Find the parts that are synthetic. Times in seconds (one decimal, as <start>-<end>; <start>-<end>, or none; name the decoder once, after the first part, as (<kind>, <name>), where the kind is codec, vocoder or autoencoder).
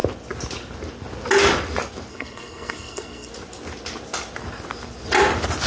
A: 2.1-3.3 (codec, SNAC)